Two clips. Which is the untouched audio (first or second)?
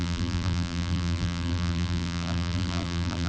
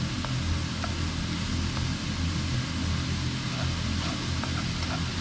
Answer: second